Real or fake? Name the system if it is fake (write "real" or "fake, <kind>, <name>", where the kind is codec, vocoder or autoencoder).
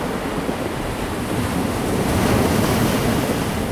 real